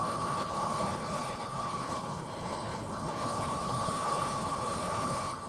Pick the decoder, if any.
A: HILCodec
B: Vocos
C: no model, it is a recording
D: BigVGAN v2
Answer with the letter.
A